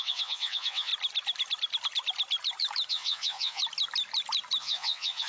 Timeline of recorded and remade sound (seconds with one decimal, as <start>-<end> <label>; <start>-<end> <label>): 0.0-0.9 remade; 0.9-2.9 recorded; 2.9-3.6 remade; 3.6-4.6 recorded; 4.6-5.3 remade